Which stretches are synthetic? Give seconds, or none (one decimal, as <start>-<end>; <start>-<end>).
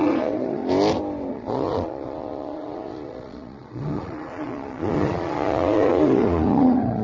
0.0-0.6; 1.3-7.0